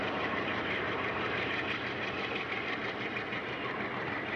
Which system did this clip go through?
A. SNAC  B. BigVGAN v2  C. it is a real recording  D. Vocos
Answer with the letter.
C